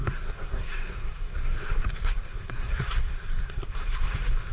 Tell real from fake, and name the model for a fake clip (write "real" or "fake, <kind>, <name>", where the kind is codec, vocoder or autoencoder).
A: fake, codec, SNAC